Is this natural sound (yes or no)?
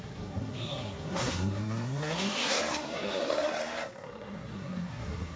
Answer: no